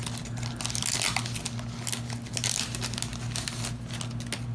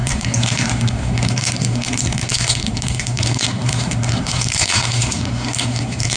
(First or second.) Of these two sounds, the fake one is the second